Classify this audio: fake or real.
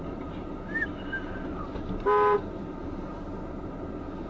real